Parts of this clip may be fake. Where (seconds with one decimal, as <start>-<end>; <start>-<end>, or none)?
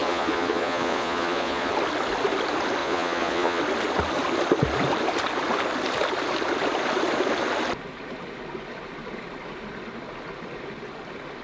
0.0-1.7; 2.8-3.6